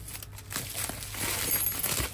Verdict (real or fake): real